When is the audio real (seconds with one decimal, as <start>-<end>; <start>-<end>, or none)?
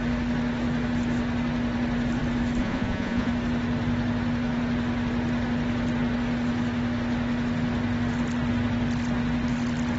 0.0-2.6; 3.3-10.0